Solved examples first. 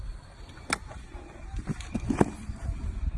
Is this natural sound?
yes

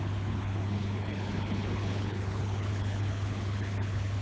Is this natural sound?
no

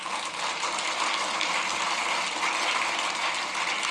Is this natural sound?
yes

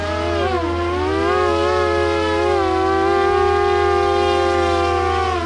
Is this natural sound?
yes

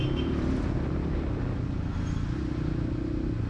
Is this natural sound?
yes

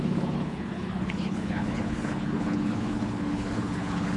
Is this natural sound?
no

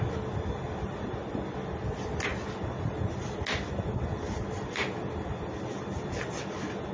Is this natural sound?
yes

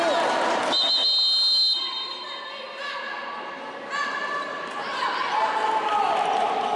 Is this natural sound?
yes